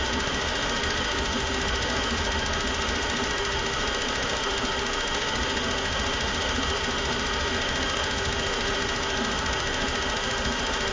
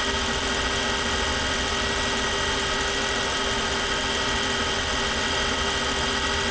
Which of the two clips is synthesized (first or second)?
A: first